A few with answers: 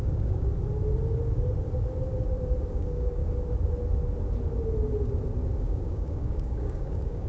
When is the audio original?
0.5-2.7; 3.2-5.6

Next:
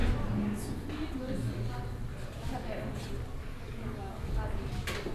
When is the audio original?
0.0-3.5; 4.3-5.1

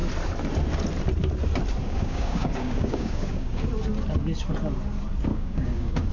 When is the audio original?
0.0-1.8; 3.6-5.3

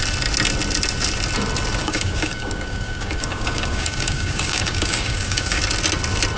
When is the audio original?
0.0-1.8; 5.6-6.4

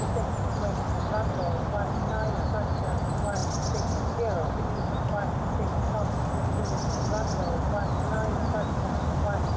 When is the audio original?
0.0-9.6

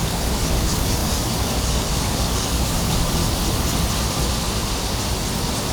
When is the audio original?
3.2-5.7

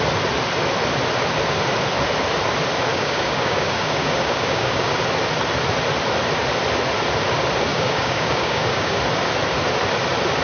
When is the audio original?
0.0-2.9; 4.9-7.7; 9.0-10.4

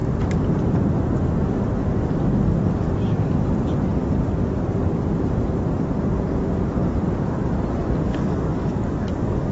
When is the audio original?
0.0-8.1